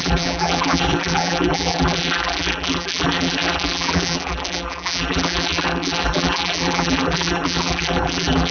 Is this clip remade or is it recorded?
remade